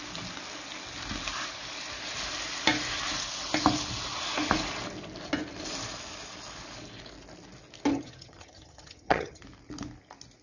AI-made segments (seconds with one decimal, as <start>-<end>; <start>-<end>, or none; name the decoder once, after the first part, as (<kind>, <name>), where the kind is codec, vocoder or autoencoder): 7.9-9.4 (vocoder, HiFi-GAN)